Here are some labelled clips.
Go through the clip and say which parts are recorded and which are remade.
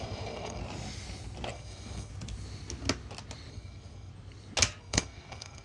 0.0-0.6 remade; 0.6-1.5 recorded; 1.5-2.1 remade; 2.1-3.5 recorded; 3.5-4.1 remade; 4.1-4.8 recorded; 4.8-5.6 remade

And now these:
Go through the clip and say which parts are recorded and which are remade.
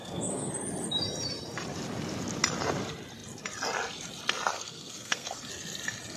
0.0-0.5 remade; 0.5-4.5 recorded; 4.5-5.5 remade; 5.5-6.2 recorded